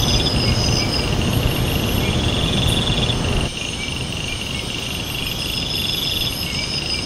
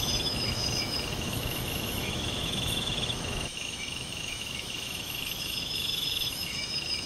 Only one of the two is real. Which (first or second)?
first